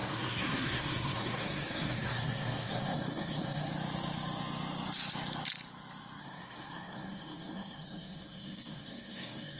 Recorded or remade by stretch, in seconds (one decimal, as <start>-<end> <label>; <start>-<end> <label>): 0.0-3.7 remade; 3.7-6.2 recorded; 6.2-9.6 remade